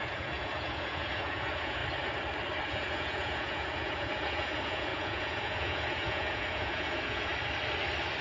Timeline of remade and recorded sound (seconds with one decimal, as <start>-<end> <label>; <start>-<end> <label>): 0.0-1.8 remade; 1.8-2.7 recorded; 2.7-7.3 remade; 7.3-8.2 recorded